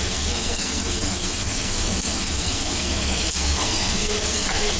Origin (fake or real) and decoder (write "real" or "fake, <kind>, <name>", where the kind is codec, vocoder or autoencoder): fake, codec, SNAC